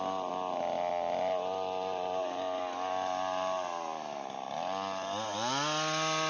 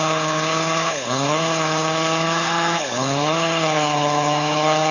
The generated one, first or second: second